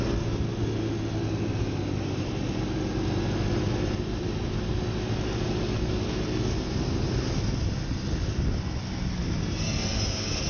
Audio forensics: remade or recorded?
recorded